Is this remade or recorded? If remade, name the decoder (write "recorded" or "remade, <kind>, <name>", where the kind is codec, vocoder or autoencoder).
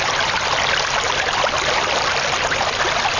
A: recorded